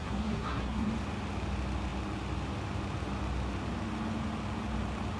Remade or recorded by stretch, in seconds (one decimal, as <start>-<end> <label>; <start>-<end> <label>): 0.0-0.9 remade; 0.9-5.2 recorded